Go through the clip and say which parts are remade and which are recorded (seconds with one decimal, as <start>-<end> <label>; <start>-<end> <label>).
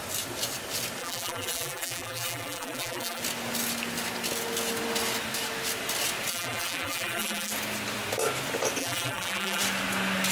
0.0-1.0 recorded; 1.0-3.2 remade; 3.2-6.3 recorded; 6.3-7.5 remade; 7.5-8.8 recorded; 8.8-9.6 remade; 9.6-10.3 recorded